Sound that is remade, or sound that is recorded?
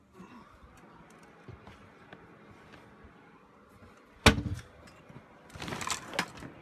recorded